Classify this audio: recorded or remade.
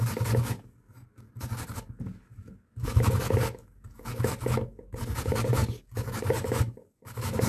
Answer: remade